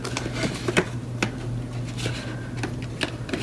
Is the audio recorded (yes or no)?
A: yes